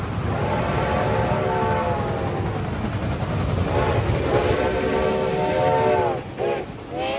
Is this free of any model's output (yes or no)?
yes